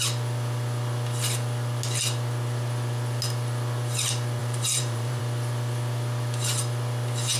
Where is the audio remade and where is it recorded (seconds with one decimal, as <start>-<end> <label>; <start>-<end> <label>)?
0.0-4.4 recorded; 4.4-5.2 remade; 5.2-7.4 recorded